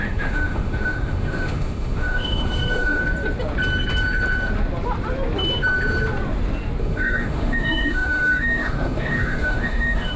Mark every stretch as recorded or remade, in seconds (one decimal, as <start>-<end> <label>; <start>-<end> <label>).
0.0-3.0 remade; 3.0-6.8 recorded; 6.8-10.2 remade

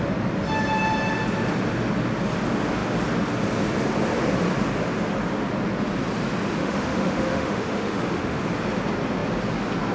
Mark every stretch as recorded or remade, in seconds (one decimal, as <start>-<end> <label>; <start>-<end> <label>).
0.0-6.6 recorded; 6.6-8.4 remade; 8.4-9.9 recorded